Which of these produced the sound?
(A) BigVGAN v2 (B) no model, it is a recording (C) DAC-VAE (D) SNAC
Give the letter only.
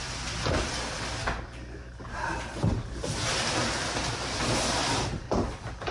B